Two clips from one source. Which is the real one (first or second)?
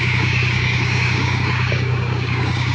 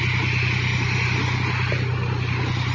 second